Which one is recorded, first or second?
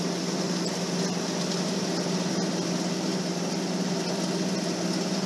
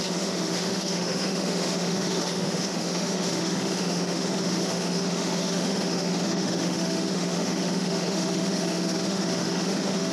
first